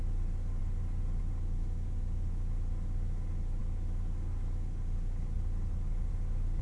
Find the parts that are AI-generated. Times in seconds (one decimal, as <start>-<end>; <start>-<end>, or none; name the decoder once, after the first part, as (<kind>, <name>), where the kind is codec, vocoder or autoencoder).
none

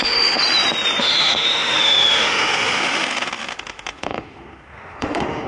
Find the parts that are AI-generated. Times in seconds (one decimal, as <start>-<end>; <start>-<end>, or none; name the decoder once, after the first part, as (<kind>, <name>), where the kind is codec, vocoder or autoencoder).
0.0-0.4 (autoencoder, DAC-VAE); 1.0-5.5

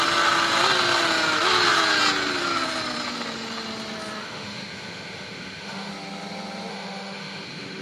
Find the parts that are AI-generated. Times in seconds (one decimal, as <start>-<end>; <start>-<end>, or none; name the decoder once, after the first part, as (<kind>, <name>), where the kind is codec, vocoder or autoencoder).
4.2-5.9 (autoencoder, DAC-VAE); 6.7-7.8

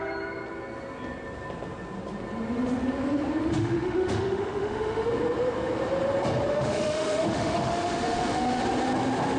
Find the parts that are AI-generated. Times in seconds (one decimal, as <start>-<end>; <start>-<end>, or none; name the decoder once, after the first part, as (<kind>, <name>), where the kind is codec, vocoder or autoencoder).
3.5-5.1 (autoencoder, DAC-VAE); 6.5-8.6

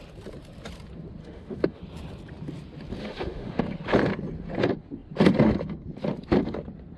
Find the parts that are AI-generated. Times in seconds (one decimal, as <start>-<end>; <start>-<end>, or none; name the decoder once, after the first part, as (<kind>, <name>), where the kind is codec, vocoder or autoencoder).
1.2-1.8 (autoencoder, DAC-VAE); 3.0-3.6